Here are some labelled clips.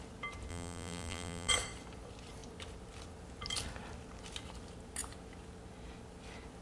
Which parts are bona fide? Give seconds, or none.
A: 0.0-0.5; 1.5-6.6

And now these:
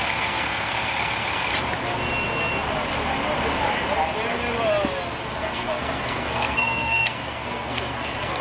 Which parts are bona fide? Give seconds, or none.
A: 1.5-5.3

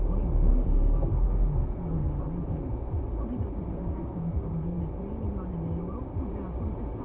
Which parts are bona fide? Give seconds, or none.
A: 0.0-0.5; 2.6-3.7; 4.8-7.0